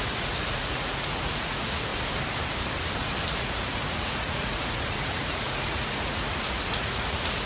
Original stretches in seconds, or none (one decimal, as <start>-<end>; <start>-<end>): 1.9-3.4

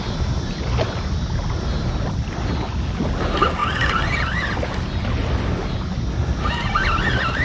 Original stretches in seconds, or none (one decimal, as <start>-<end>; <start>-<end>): 0.0-7.4